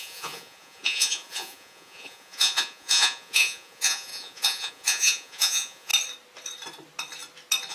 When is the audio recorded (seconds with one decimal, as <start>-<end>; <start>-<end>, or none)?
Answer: 5.9-7.7